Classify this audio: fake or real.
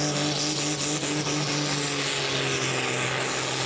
real